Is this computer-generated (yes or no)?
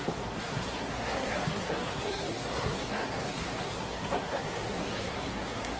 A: yes